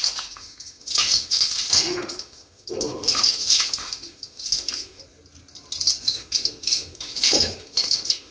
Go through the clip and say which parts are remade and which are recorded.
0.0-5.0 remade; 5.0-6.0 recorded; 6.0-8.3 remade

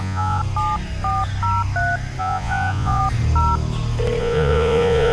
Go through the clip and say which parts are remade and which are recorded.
0.0-0.4 remade; 0.4-2.2 recorded; 2.2-3.0 remade; 3.0-4.2 recorded; 4.2-5.1 remade